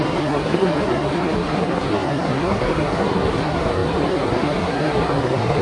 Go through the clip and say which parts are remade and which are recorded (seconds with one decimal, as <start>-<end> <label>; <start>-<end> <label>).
0.0-5.6 remade